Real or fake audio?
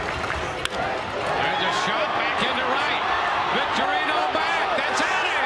real